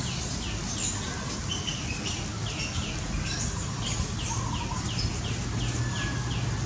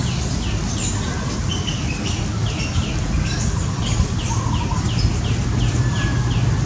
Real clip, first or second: first